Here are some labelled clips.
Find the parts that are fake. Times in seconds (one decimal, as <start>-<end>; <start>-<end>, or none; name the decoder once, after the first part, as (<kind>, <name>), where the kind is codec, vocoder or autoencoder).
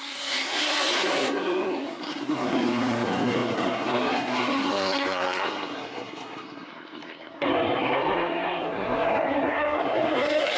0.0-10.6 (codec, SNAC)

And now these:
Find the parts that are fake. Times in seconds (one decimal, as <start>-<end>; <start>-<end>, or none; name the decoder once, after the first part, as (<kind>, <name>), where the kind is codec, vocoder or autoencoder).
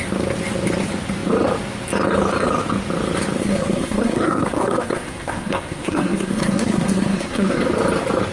3.4-7.6 (codec, SNAC)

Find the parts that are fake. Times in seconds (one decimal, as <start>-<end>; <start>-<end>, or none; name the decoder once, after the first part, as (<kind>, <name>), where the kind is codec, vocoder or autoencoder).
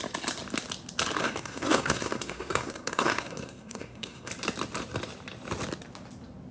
1.2-4.3 (codec, SNAC)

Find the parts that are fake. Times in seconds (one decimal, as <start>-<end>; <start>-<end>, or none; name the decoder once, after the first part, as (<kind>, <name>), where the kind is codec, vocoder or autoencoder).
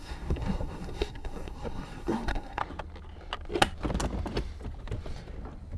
0.0-2.6 (codec, SNAC)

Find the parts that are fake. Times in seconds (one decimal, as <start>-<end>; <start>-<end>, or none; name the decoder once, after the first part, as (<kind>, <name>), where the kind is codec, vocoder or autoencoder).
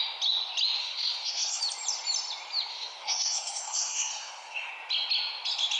0.8-1.6 (codec, SNAC); 2.7-4.7